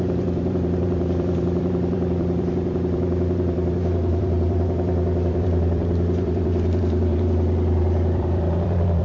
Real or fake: fake